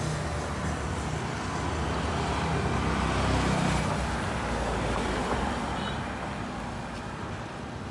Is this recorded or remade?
recorded